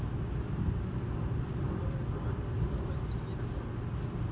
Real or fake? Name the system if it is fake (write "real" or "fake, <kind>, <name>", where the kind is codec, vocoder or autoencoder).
real